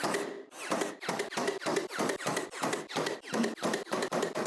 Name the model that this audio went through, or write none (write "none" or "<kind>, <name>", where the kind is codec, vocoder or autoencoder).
none